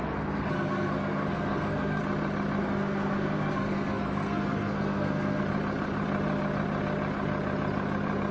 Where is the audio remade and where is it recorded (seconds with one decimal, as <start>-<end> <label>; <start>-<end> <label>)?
0.0-2.0 remade; 2.0-2.6 recorded; 2.6-5.4 remade; 5.4-8.3 recorded